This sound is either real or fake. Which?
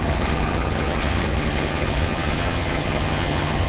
fake